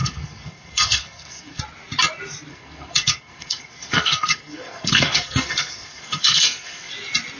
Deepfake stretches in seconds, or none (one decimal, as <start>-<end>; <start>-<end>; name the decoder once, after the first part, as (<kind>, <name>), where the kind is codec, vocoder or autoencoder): 0.0-1.6 (codec, SNAC); 2.5-6.9